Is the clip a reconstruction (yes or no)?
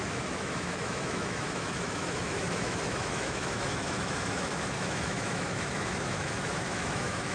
yes